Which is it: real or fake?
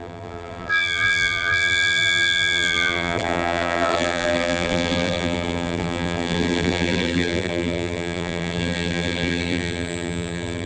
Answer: fake